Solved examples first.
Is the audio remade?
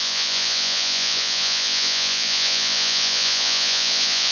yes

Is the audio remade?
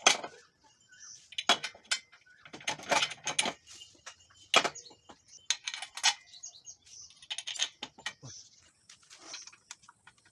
no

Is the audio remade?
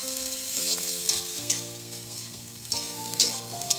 yes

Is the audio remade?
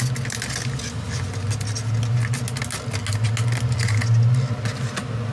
no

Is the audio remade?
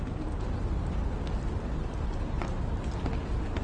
no